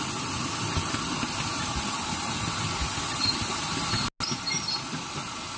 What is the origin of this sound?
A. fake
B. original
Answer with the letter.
B